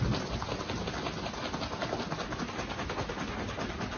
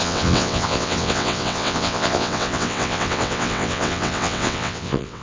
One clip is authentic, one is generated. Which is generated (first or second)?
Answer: second